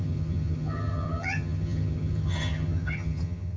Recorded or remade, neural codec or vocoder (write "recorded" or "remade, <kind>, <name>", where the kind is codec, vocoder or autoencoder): remade, vocoder, HiFi-GAN